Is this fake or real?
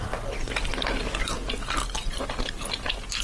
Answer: real